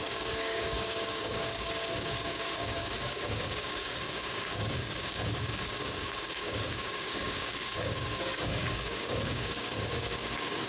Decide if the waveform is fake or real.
fake